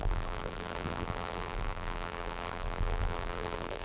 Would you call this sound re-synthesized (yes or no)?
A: yes